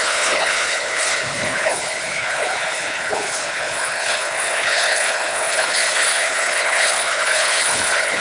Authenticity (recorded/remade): remade